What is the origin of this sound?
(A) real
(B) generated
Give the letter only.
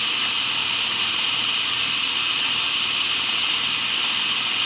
A